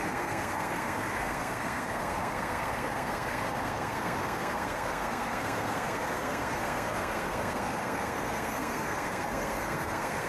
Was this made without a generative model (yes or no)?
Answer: no